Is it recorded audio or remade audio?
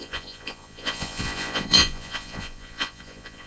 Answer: remade